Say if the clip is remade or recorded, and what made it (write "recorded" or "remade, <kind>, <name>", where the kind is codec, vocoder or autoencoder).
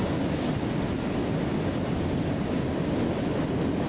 recorded